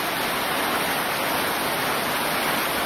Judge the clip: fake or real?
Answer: real